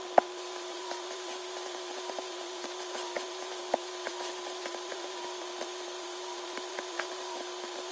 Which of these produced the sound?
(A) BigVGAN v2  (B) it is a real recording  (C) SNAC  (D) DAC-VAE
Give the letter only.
A